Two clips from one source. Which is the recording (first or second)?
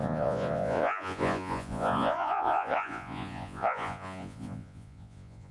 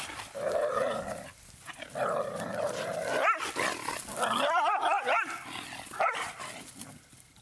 second